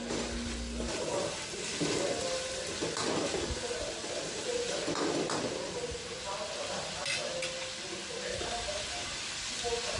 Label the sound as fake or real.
real